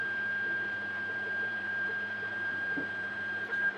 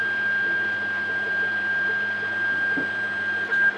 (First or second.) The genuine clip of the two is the second